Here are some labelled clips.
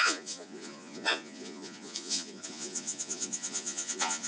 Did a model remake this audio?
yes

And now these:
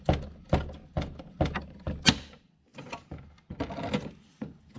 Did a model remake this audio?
no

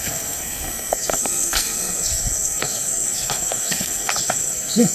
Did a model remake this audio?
yes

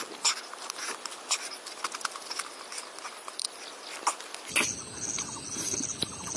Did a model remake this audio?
no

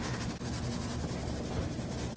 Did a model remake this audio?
no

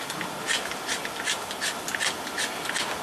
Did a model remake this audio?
no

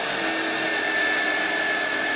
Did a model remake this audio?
no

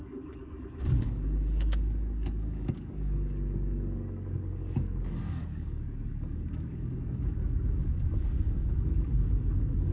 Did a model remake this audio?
yes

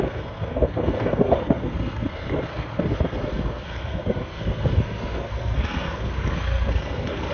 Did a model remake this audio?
yes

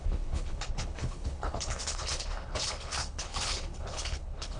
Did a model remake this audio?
yes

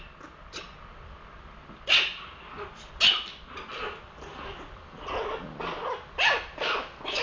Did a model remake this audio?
no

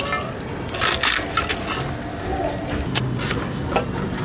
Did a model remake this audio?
no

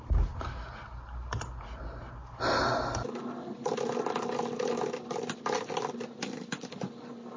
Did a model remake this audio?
no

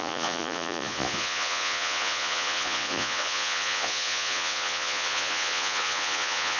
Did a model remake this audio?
yes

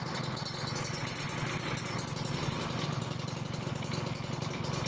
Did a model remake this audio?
no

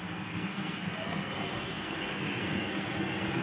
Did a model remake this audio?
yes